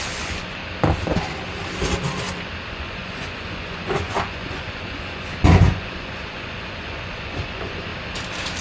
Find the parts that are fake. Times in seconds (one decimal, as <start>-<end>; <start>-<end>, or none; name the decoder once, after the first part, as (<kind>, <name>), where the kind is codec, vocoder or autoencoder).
0.0-0.6 (vocoder, Vocos); 2.7-7.9